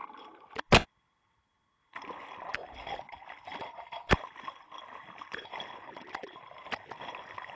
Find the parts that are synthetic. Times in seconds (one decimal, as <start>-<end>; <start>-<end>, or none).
none